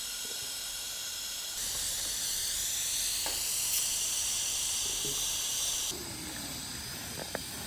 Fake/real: fake